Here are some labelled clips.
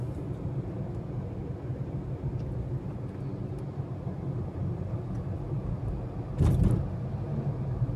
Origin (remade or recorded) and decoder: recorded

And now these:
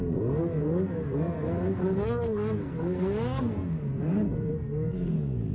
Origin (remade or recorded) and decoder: remade, codec, SNAC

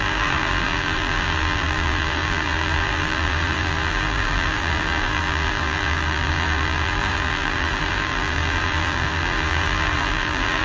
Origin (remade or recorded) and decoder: remade, vocoder, BigVGAN v2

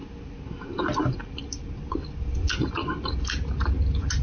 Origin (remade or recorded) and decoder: recorded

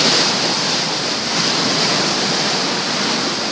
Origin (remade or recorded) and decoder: recorded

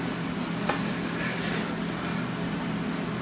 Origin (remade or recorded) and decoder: recorded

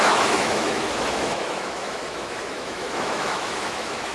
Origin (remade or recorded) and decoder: remade, autoencoder, DAC-VAE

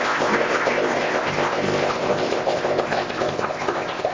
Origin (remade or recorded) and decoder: remade, codec, ZipCodec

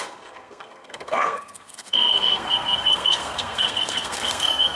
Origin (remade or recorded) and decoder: remade, codec, SNAC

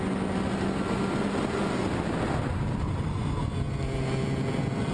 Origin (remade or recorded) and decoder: recorded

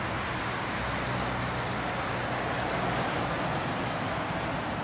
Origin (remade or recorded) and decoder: recorded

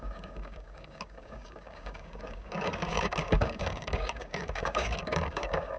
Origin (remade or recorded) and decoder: remade, codec, DAC